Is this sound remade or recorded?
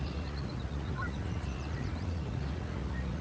remade